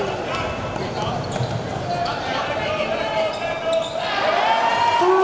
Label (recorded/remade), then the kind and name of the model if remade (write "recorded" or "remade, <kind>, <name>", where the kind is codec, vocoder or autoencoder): recorded